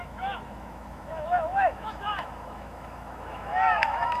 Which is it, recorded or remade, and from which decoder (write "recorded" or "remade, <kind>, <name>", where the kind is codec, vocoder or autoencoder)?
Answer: remade, autoencoder, DAC-VAE